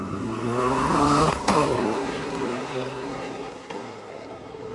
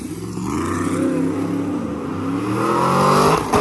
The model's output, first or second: first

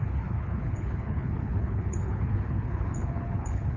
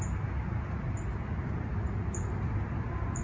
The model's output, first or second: first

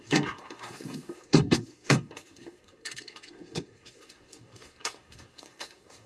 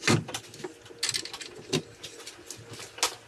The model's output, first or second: first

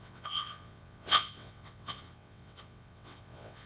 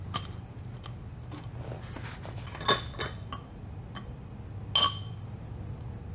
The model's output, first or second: first